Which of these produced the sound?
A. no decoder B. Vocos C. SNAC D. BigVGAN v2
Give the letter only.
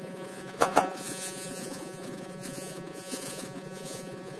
B